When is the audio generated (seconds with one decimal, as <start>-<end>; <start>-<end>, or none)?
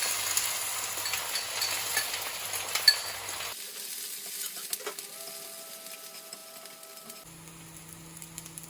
none